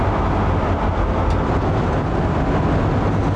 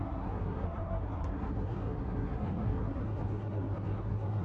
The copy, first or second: second